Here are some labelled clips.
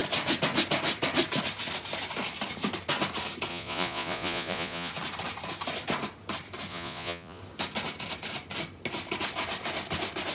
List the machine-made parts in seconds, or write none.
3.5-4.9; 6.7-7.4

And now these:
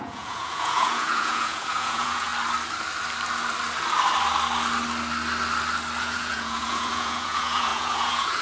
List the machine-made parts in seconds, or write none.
0.0-2.3; 6.0-8.4